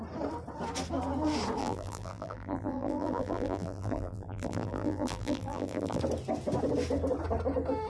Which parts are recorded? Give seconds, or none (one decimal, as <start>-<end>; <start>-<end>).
0.0-1.6; 6.0-7.9